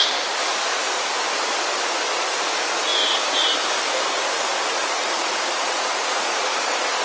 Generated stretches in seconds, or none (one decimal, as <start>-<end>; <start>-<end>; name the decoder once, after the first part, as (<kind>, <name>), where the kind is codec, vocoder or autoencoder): 4.8-6.6 (vocoder, Vocos)